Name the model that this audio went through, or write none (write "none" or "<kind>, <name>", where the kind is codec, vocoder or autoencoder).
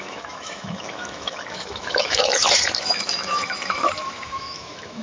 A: autoencoder, DAC-VAE